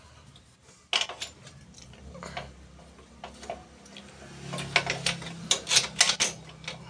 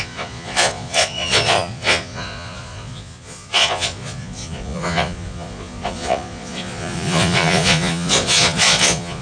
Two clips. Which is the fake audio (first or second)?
second